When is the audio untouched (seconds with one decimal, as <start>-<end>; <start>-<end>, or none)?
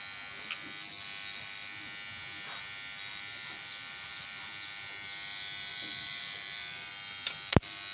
0.0-3.3; 4.4-5.7; 6.9-7.9